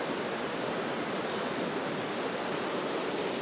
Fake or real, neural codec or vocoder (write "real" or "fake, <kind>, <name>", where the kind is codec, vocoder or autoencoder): real